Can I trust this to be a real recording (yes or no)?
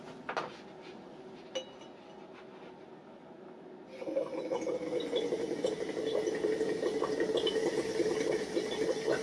yes